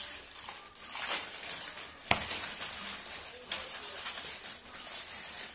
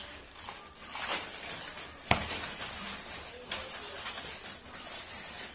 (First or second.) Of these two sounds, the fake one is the first